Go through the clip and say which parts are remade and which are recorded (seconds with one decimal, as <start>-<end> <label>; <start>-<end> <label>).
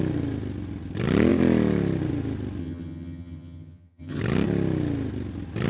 0.0-2.6 recorded; 2.6-4.2 remade; 4.2-5.7 recorded